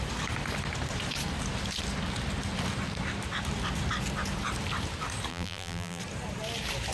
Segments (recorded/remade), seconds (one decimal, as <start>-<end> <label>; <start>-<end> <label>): 0.0-5.3 recorded; 5.3-6.0 remade; 6.0-6.9 recorded